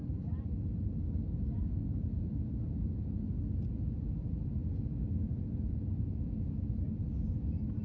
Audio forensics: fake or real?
real